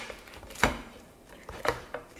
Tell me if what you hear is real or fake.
fake